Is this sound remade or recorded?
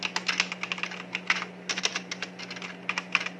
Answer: recorded